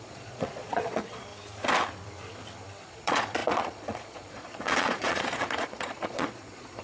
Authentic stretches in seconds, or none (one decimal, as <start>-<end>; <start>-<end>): 1.3-2.8